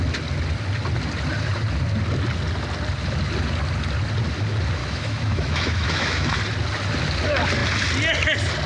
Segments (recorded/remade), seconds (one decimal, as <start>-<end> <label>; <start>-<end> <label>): 0.0-4.8 recorded; 4.8-6.4 remade; 6.4-8.7 recorded